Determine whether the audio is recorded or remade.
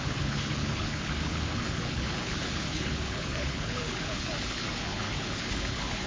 remade